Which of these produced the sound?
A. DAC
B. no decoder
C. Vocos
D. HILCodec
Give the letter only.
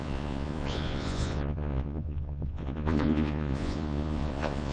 C